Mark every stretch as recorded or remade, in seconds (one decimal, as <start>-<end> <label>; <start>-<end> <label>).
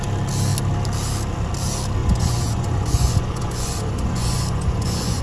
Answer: 0.0-2.0 recorded; 2.0-5.2 remade